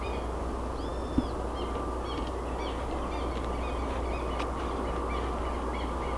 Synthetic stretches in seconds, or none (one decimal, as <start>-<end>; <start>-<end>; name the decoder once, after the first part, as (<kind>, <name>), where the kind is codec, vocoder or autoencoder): none